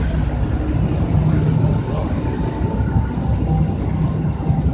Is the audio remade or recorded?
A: recorded